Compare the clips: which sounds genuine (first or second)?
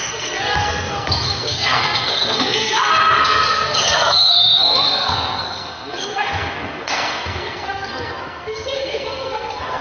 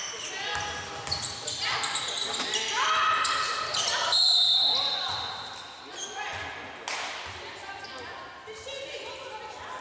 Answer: second